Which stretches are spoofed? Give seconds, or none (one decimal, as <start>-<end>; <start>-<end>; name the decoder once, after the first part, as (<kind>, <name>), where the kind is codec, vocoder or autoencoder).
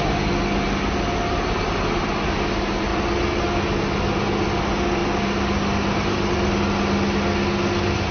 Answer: none